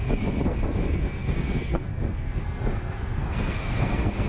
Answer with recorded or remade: remade